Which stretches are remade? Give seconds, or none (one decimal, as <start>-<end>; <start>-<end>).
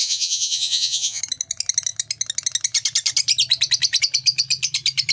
0.0-1.2